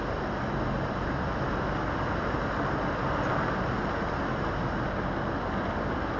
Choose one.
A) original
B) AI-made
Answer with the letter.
A